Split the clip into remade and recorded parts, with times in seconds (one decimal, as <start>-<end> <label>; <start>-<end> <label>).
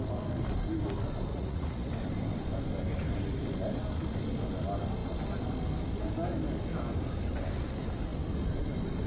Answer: 0.0-1.3 recorded; 1.3-1.9 remade; 1.9-9.1 recorded